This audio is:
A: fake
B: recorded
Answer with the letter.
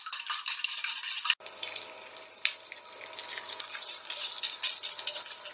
B